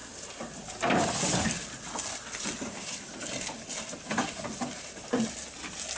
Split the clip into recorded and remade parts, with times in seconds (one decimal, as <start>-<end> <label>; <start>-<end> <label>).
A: 0.0-6.0 recorded